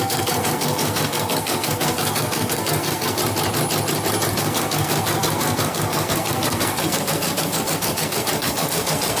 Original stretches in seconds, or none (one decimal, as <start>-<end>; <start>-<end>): 3.2-4.3